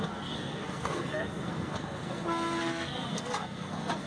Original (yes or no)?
no